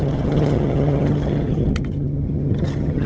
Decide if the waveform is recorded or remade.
remade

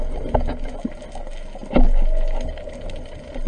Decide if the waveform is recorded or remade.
recorded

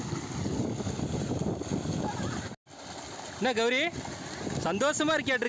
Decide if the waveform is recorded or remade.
recorded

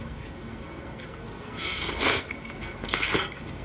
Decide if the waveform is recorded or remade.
remade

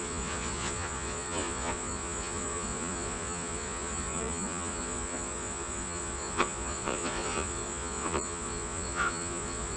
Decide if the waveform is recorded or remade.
remade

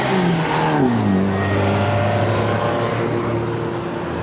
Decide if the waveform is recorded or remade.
recorded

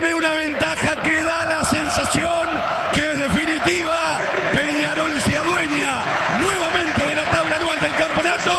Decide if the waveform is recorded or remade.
remade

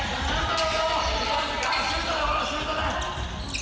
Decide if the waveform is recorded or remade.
recorded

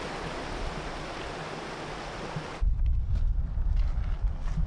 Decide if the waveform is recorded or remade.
recorded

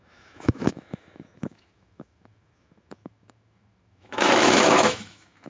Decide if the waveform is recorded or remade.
remade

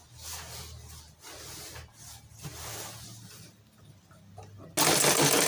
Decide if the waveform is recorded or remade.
recorded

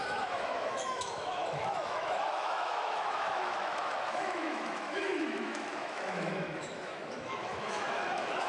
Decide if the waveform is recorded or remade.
remade